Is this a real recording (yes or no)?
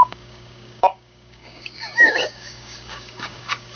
no